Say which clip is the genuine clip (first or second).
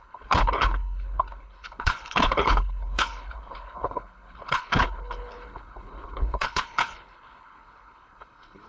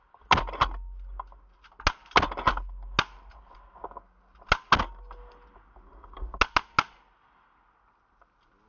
second